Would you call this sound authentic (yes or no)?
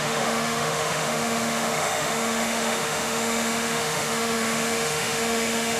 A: no